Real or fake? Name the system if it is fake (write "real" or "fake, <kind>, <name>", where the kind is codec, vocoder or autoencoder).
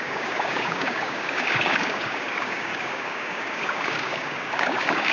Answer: fake, codec, DAC